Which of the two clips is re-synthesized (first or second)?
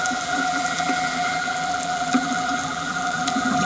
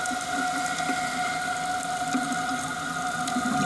first